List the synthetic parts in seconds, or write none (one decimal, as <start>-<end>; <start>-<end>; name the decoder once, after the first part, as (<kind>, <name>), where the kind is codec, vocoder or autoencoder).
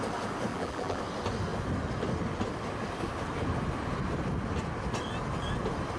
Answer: 0.5-1.0 (vocoder, BigVGAN v2)